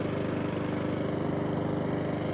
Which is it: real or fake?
real